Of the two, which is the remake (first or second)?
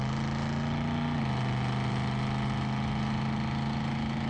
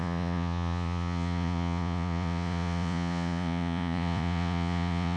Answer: second